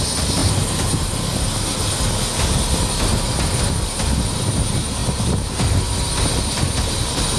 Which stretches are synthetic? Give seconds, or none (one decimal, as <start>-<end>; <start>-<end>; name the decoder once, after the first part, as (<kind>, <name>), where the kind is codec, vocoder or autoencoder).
none